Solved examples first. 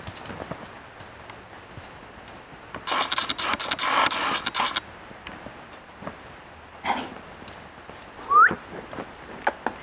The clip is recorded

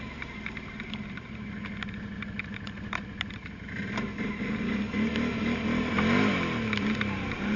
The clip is recorded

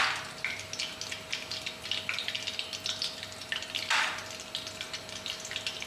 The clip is recorded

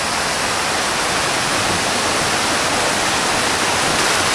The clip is recorded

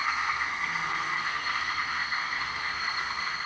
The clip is remade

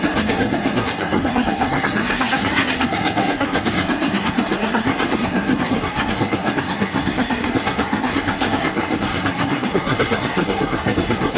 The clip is remade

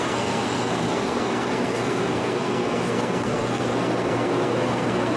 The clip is remade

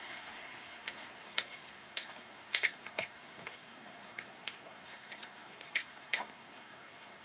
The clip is remade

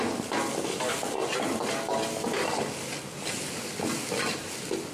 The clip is recorded